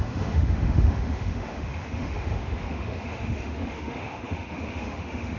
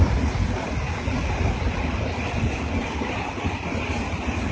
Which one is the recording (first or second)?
second